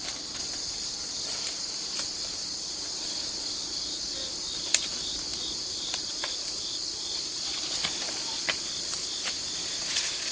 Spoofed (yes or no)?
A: no